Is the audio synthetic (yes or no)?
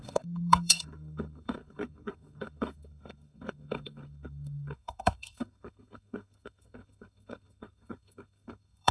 yes